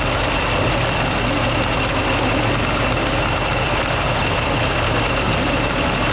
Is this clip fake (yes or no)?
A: no